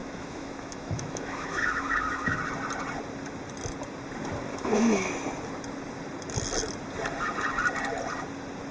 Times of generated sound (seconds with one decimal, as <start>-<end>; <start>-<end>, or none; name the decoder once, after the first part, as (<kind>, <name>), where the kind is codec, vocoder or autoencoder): 0.0-2.4 (autoencoder, DAC-VAE); 4.5-5.1